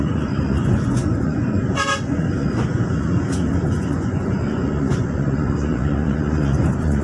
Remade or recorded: remade